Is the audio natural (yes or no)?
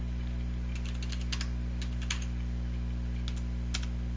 yes